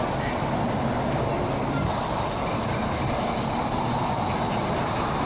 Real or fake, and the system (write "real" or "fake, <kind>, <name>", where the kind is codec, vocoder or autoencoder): real